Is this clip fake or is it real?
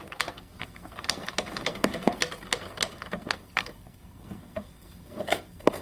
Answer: fake